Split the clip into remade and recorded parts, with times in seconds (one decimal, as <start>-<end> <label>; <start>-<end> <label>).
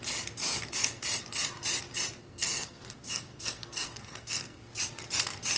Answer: 0.0-0.4 recorded; 0.4-1.0 remade; 1.0-2.2 recorded; 2.2-4.7 remade; 4.7-5.6 recorded